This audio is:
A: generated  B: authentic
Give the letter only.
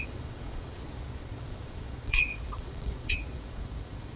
A